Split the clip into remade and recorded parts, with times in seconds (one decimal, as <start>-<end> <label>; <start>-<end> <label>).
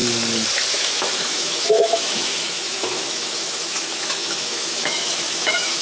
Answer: 0.0-0.7 recorded; 0.7-5.8 remade